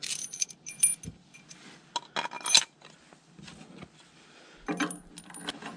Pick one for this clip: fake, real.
real